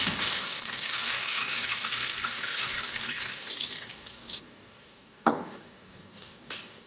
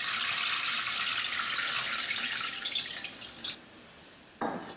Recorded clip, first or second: second